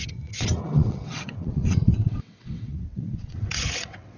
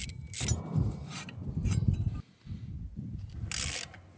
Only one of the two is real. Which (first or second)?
second